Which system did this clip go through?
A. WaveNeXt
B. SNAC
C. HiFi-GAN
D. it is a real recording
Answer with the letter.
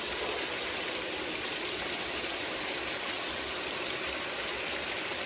D